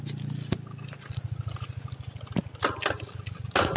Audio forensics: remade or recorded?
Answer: recorded